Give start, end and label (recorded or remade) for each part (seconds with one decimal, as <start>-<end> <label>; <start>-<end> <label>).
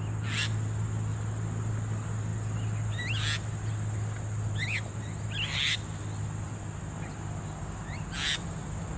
0.0-9.0 recorded